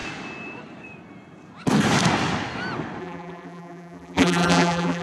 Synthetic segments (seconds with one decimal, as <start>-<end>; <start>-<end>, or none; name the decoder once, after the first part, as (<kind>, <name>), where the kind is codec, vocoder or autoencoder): 3.0-5.0 (vocoder, BigVGAN v2)